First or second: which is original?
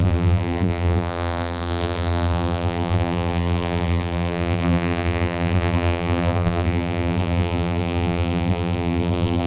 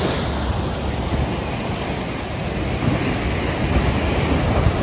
second